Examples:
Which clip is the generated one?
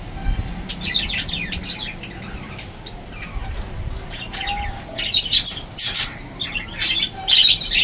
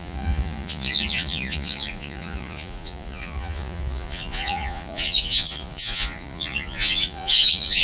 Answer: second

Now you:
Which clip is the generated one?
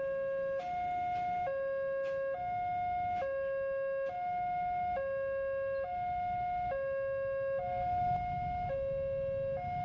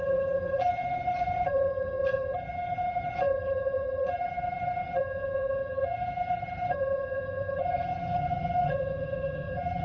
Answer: second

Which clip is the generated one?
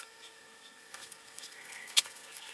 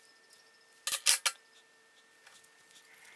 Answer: first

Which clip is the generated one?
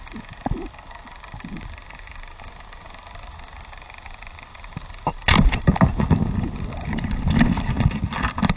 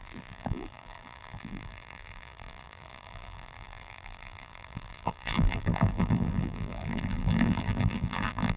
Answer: second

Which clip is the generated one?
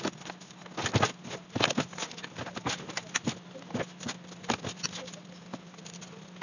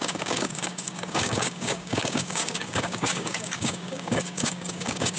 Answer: second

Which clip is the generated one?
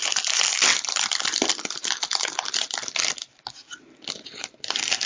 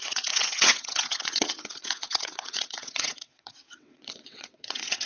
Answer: second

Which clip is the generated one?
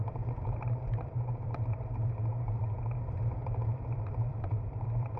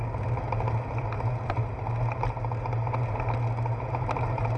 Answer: first